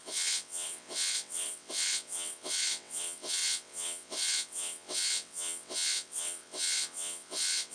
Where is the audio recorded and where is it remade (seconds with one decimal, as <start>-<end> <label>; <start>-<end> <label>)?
0.0-7.7 remade